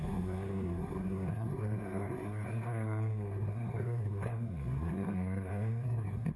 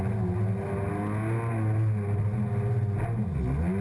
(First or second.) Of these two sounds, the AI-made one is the first